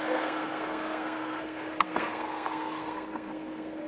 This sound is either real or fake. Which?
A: fake